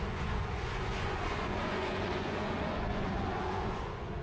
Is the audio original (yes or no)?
no